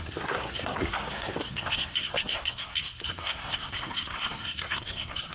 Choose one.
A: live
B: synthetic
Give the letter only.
B